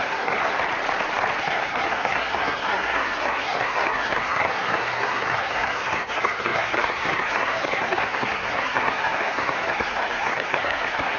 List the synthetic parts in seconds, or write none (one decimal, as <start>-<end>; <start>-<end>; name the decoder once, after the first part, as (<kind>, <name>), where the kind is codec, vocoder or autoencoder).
0.0-0.5 (codec, SNAC); 1.4-11.2